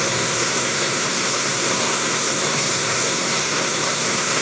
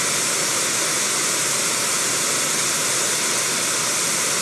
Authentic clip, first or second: second